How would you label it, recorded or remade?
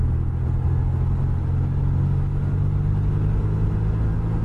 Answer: recorded